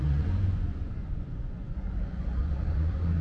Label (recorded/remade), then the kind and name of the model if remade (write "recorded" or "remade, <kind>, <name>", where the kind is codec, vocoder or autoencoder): remade, vocoder, Vocos